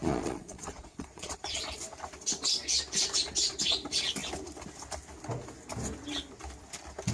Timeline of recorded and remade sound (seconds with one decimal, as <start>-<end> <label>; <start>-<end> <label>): 0.0-1.6 remade; 1.6-7.1 recorded